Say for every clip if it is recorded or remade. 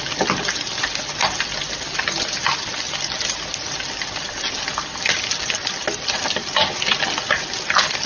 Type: recorded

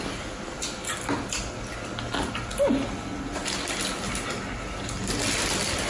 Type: recorded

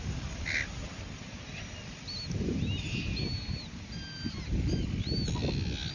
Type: recorded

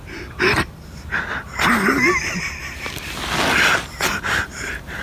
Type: recorded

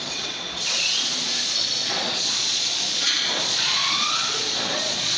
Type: remade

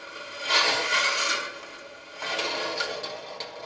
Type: recorded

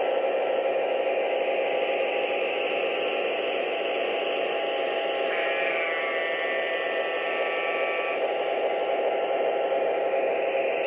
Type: recorded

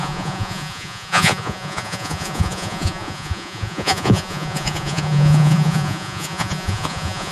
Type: remade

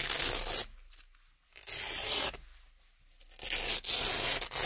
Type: recorded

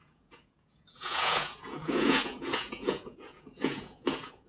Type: remade